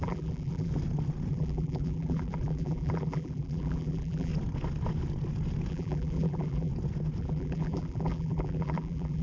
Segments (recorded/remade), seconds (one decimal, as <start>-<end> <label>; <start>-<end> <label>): 0.0-0.7 remade; 0.7-1.3 recorded; 1.3-4.3 remade; 4.3-5.7 recorded; 5.7-6.7 remade; 6.7-7.2 recorded; 7.2-9.2 remade